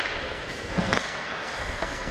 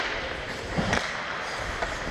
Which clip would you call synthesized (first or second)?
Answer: first